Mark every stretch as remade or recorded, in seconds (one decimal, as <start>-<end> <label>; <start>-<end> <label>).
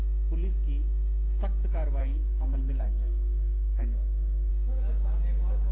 0.0-2.0 recorded; 2.0-4.5 remade; 4.5-5.7 recorded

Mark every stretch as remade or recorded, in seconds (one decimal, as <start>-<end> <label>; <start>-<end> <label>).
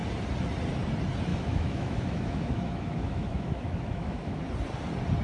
0.0-1.3 recorded; 1.3-4.4 remade; 4.4-5.2 recorded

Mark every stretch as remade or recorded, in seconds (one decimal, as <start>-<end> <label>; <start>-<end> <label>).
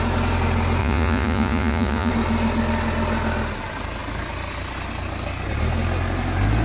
0.0-0.8 recorded; 0.8-2.1 remade; 2.1-6.6 recorded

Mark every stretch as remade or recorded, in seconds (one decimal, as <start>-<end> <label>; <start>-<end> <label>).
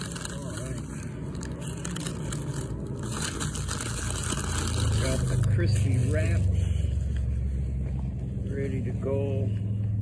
0.0-10.0 recorded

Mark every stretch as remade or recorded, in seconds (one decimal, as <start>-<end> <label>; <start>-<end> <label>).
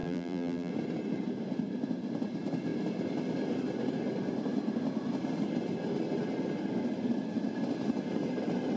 0.0-0.7 remade; 0.7-8.8 recorded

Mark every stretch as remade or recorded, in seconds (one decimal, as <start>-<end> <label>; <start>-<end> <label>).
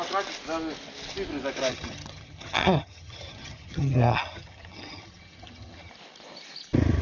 0.0-1.7 recorded; 1.7-5.9 remade; 5.9-7.0 recorded